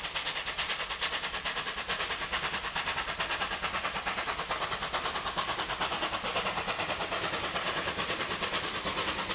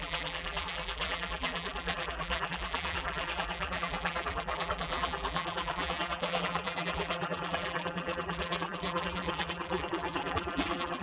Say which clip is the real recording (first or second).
first